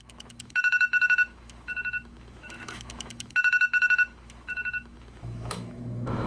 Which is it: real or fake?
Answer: fake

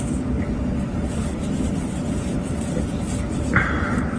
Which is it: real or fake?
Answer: fake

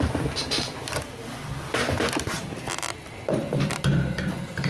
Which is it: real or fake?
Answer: real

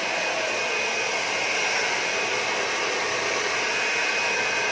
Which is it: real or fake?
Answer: real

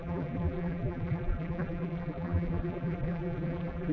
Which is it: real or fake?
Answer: fake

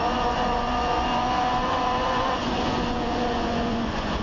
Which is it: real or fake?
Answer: fake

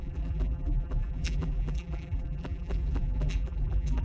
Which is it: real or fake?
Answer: fake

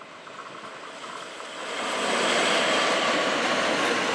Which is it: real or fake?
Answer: real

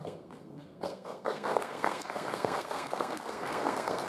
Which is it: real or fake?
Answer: fake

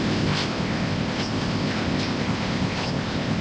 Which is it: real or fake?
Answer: fake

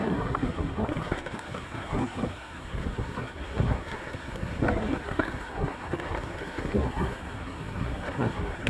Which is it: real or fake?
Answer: fake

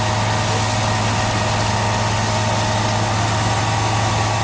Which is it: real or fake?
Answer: real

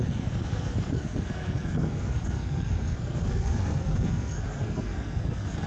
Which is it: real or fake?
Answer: fake